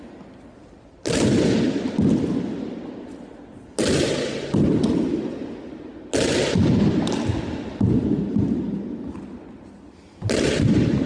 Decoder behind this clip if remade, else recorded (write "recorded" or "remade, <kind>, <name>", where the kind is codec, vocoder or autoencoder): recorded